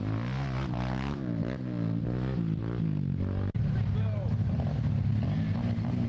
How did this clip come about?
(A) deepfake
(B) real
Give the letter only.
B